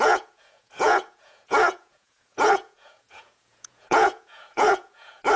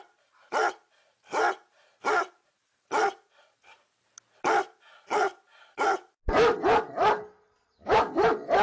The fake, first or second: first